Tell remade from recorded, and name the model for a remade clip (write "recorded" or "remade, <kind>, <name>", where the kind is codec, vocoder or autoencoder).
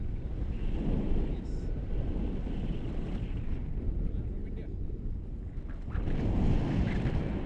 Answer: recorded